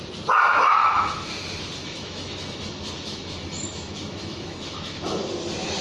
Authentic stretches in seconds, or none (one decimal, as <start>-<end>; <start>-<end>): 0.0-0.8; 1.3-1.8; 5.3-5.8